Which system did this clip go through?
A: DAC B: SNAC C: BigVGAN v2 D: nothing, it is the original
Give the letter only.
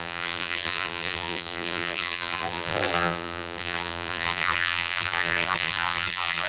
C